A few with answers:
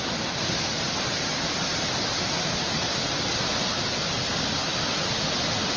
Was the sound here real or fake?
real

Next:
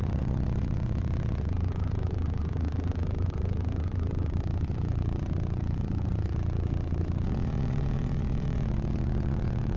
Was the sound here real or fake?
fake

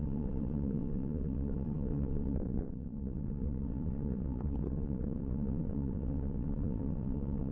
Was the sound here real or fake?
fake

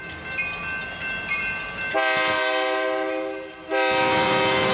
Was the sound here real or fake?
real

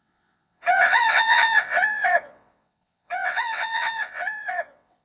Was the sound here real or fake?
fake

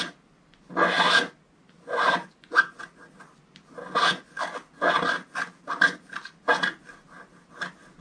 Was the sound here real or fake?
real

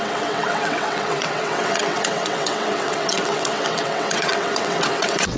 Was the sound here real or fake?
fake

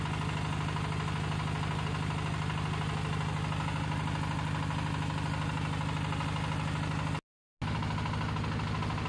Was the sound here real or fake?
real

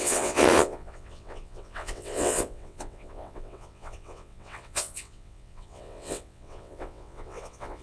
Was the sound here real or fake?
fake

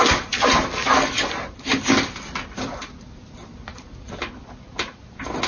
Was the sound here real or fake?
real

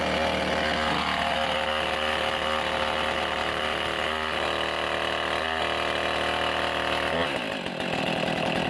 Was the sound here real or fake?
real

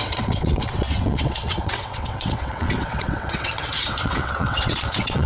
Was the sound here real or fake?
fake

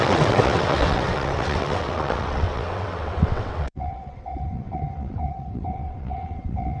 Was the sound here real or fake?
fake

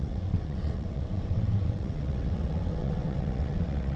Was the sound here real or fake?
fake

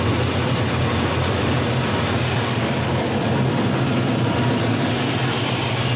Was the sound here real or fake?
real